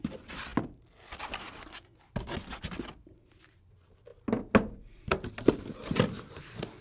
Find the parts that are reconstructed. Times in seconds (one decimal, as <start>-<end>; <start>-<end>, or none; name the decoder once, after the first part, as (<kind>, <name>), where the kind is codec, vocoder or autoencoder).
none